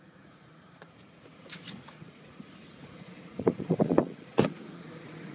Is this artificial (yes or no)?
yes